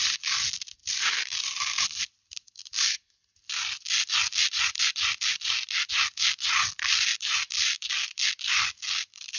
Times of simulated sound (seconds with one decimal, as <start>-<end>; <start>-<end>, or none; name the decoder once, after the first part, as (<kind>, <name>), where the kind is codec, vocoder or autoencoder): 0.8-5.9 (vocoder, BigVGAN v2); 7.1-9.4